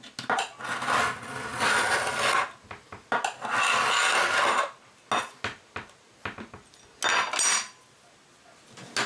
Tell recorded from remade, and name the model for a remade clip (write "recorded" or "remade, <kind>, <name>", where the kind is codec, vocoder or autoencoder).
recorded